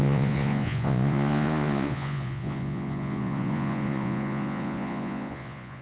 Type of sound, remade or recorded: remade